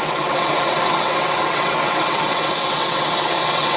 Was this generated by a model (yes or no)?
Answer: yes